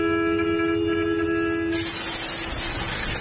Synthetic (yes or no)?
no